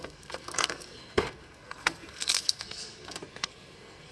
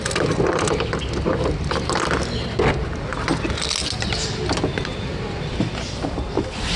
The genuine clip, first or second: second